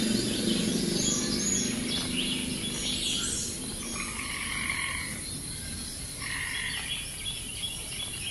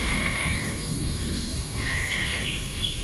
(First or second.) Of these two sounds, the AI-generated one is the second